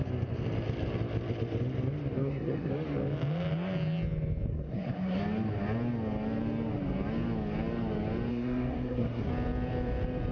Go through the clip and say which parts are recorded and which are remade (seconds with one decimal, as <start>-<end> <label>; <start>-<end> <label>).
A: 0.0-2.2 recorded; 2.2-2.7 remade; 2.7-4.5 recorded; 4.5-5.2 remade; 5.2-8.3 recorded; 8.3-9.3 remade; 9.3-10.3 recorded